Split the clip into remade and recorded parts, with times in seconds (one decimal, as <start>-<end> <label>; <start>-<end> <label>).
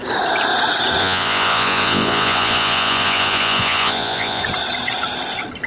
0.0-1.0 recorded; 1.0-4.4 remade; 4.4-5.7 recorded